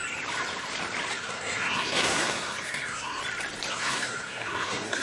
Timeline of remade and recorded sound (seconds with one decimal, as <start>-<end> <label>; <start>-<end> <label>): 0.0-1.1 recorded; 1.1-3.2 remade; 3.2-3.7 recorded; 3.7-5.0 remade